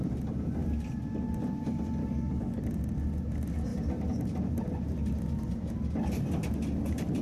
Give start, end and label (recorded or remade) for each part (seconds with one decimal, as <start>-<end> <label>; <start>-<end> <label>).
0.0-2.0 recorded; 2.0-2.6 remade; 2.6-7.2 recorded